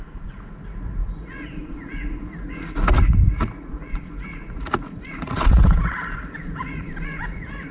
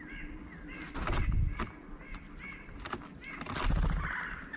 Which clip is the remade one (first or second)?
first